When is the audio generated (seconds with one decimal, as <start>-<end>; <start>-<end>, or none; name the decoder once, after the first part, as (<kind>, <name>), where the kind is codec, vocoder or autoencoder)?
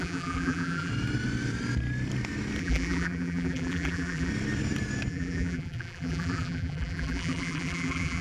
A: 0.0-0.9 (vocoder, BigVGAN v2); 2.6-4.3; 5.1-8.2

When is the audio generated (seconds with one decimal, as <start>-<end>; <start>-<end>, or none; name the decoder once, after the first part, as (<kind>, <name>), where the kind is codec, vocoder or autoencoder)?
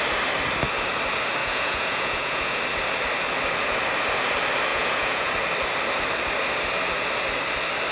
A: 1.4-2.6 (vocoder, Vocos); 4.7-5.3